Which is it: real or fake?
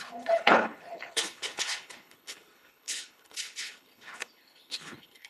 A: fake